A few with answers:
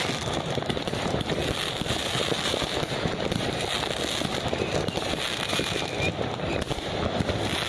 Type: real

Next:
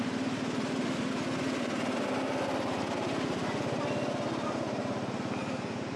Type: real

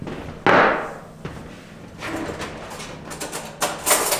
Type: real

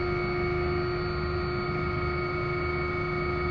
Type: real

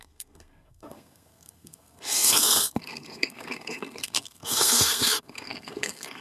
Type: fake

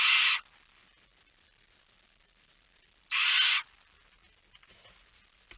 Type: real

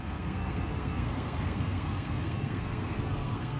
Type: fake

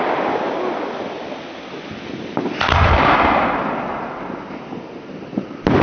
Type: real